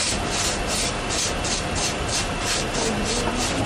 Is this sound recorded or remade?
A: recorded